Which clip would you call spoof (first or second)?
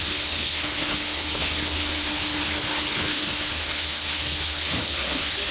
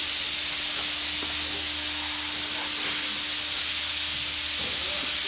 first